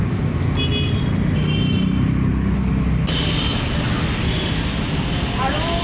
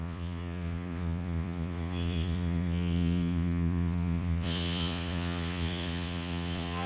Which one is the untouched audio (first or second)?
first